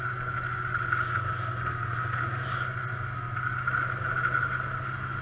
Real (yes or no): yes